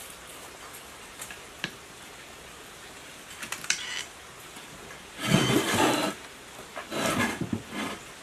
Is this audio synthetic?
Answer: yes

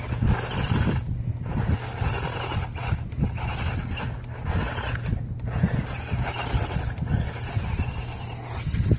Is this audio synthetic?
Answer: no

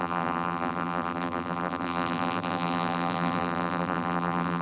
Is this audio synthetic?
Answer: yes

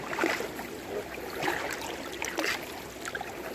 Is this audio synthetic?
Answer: no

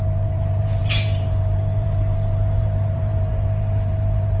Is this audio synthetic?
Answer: yes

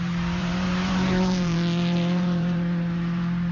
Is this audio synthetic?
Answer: yes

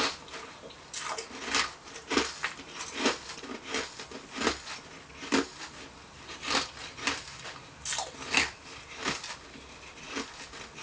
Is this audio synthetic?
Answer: no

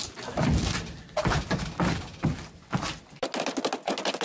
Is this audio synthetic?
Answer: no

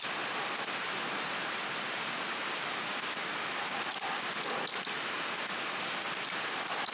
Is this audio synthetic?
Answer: yes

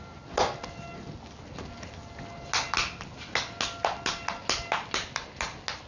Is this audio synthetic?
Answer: no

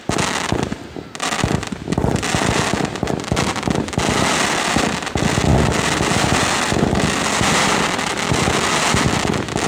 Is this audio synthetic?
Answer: no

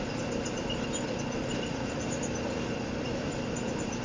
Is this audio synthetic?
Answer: yes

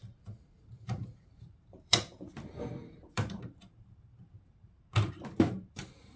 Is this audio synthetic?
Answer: yes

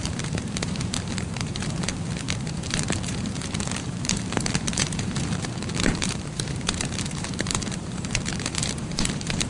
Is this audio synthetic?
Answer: yes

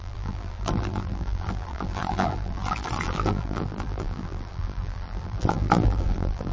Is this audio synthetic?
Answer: yes